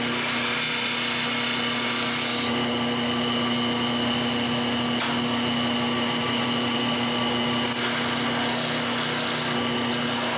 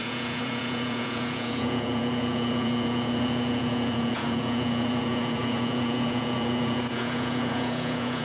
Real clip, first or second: first